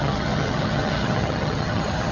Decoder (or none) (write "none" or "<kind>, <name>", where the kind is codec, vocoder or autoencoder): vocoder, HiFi-GAN